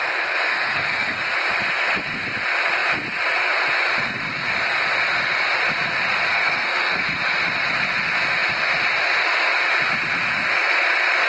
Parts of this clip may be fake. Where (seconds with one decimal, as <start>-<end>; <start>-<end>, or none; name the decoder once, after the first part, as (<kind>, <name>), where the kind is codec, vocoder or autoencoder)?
0.5-1.2 (codec, SNAC); 6.3-7.0